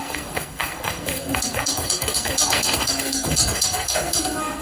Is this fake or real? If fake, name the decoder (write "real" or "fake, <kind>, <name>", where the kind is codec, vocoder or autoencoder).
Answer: fake, codec, SNAC